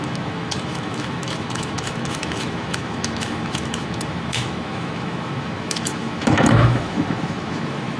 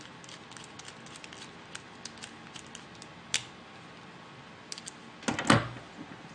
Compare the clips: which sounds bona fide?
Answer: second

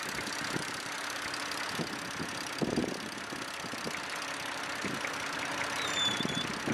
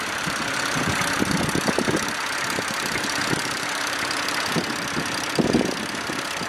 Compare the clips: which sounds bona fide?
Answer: first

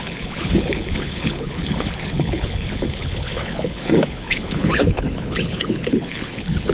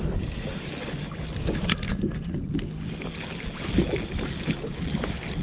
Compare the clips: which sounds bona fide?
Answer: second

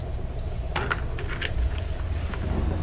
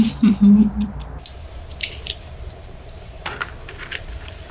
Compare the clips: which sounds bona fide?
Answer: first